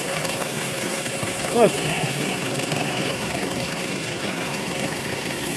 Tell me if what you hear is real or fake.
fake